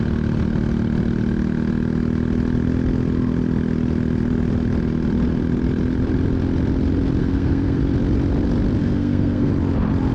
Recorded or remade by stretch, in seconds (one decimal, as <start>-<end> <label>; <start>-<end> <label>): 0.0-7.2 recorded; 7.2-7.8 remade; 7.8-8.8 recorded; 8.8-9.5 remade; 9.5-10.1 recorded